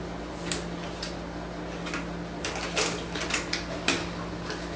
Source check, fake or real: real